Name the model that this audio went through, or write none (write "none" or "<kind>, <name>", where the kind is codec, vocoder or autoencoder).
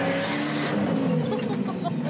none